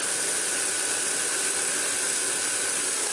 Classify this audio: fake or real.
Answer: real